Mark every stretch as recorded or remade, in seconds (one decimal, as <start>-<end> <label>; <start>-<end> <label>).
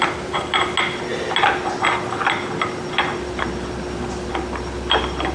0.0-5.3 recorded